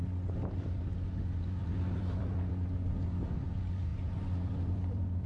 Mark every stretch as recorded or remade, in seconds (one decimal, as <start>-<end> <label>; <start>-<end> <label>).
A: 0.0-1.6 recorded; 1.6-2.5 remade; 2.5-3.9 recorded; 3.9-5.3 remade